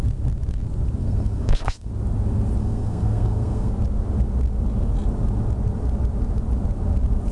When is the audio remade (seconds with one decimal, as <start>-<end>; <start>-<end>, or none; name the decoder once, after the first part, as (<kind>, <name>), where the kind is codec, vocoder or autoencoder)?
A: 1.0-1.9 (codec, SNAC); 2.6-3.7